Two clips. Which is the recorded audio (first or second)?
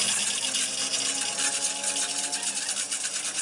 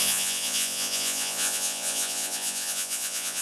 first